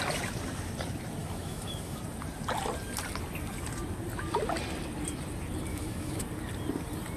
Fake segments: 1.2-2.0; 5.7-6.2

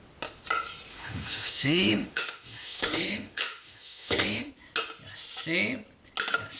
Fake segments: 0.9-4.5

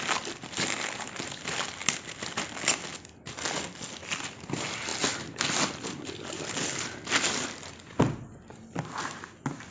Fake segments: none